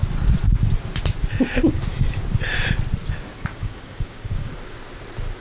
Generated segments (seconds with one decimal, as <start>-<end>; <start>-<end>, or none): 3.5-4.5